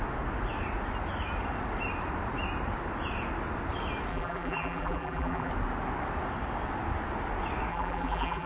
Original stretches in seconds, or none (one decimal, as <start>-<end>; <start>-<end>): 0.0-4.1; 5.5-7.7